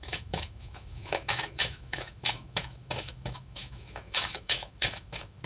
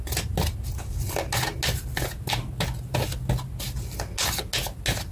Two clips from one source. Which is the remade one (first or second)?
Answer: first